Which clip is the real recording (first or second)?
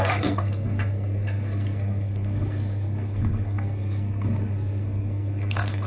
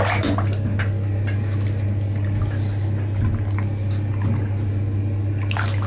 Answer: second